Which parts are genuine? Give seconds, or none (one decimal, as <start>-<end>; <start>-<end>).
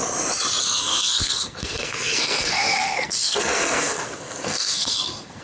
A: 0.0-0.6